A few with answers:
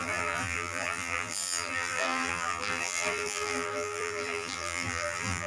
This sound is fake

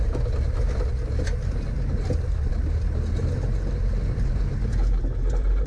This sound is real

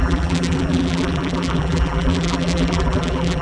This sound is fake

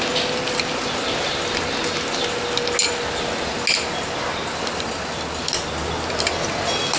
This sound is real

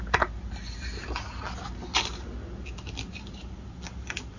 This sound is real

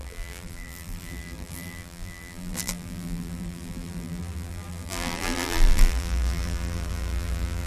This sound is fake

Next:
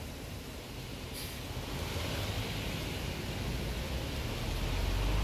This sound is real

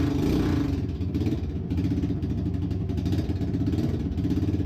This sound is real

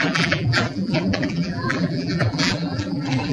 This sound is fake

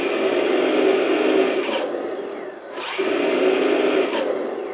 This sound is real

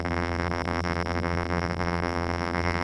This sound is fake